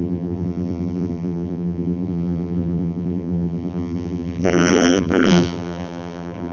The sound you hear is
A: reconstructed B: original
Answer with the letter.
A